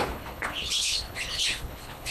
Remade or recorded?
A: remade